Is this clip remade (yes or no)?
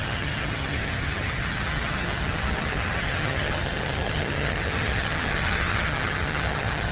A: yes